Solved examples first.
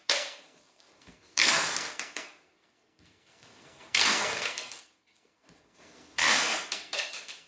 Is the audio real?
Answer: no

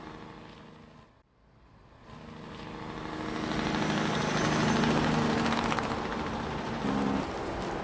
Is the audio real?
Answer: yes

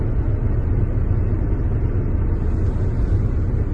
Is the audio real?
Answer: yes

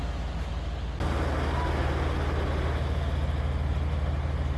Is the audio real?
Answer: yes